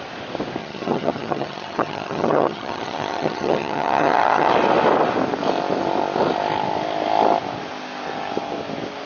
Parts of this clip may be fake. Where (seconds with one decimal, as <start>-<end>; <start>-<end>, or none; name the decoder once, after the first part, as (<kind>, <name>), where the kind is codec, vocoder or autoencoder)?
0.6-4.5 (vocoder, HiFi-GAN)